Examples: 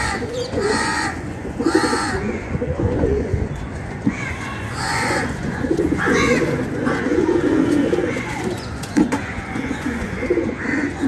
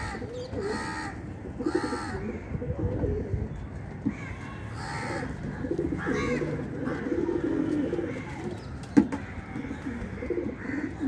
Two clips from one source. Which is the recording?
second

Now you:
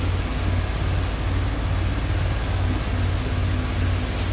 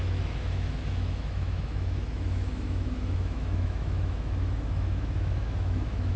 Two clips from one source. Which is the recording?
first